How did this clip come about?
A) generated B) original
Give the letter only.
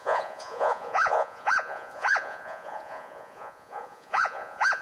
A